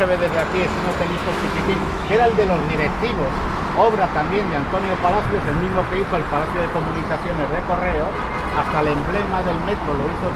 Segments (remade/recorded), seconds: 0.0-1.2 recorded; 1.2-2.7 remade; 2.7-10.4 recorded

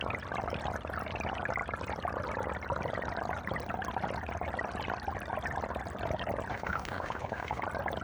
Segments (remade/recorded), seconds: 0.0-6.5 recorded; 6.5-7.6 remade; 7.6-8.0 recorded

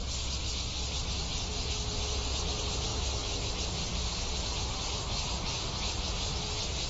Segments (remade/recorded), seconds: 0.0-2.9 recorded; 2.9-3.5 remade; 3.5-6.9 recorded

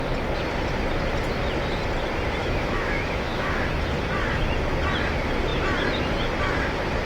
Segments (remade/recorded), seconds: 0.0-2.4 recorded; 2.4-3.7 remade; 3.7-7.1 recorded

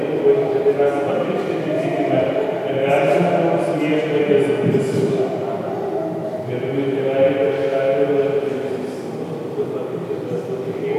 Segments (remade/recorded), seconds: 0.0-7.6 recorded; 7.6-8.1 remade; 8.1-11.0 recorded